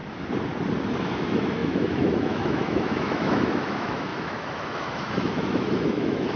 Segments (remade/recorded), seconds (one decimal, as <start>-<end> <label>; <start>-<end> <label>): 0.0-1.0 recorded; 1.0-6.4 remade